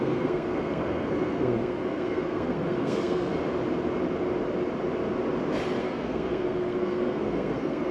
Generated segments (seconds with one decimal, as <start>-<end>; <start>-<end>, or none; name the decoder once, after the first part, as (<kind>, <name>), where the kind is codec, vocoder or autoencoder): 0.0-3.3 (codec, SNAC); 5.8-7.9